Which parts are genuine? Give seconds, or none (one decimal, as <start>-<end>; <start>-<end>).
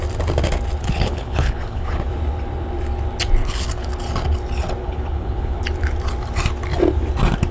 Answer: 0.0-0.8; 1.9-3.4; 3.9-4.8; 5.6-7.5